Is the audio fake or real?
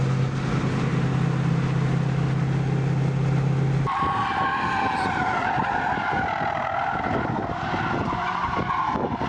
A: real